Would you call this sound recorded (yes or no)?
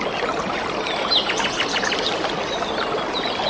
yes